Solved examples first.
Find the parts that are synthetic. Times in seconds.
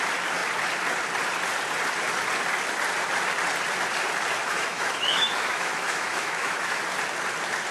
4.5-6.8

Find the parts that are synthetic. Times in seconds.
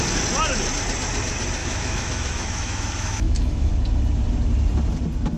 1.6-3.7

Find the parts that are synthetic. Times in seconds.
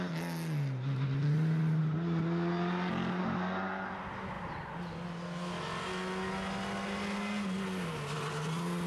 none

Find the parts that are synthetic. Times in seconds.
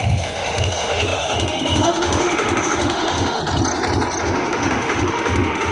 0.0-3.4; 4.2-5.7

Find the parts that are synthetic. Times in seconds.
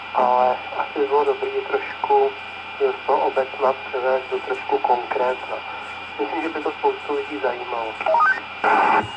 3.8-6.7